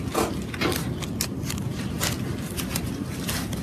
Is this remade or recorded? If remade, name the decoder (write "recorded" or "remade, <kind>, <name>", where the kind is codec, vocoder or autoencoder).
recorded